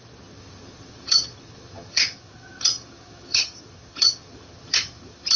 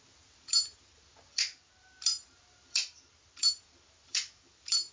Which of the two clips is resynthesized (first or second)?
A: first